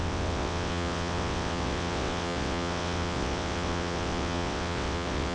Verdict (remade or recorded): remade